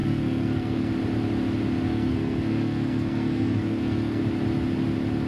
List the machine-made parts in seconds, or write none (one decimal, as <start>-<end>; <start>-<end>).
0.0-0.9; 1.9-4.2